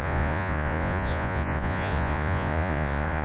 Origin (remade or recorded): remade